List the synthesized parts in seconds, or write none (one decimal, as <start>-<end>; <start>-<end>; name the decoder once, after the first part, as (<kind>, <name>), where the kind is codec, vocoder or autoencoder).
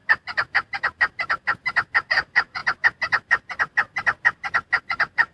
2.1-2.6 (vocoder, Vocos); 4.8-5.3